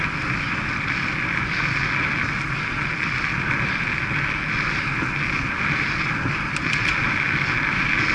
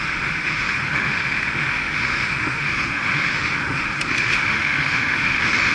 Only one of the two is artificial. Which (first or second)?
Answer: second